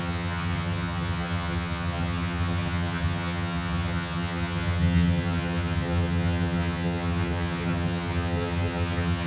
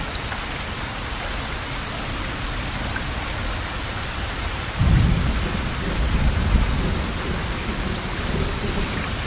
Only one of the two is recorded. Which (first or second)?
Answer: second